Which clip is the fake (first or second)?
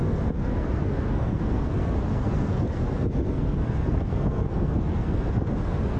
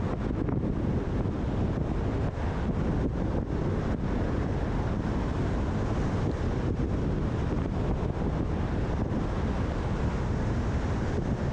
first